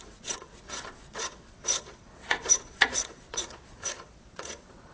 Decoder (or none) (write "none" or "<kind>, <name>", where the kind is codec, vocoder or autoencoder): vocoder, Vocos